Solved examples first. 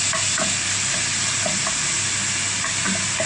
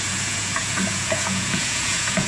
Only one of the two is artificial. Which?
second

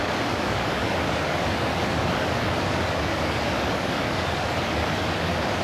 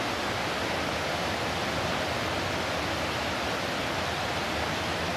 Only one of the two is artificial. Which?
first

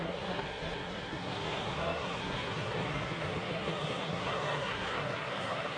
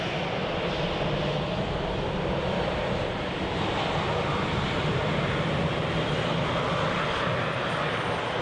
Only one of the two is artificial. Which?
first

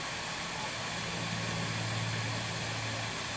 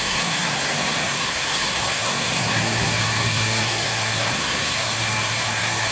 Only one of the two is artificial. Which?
second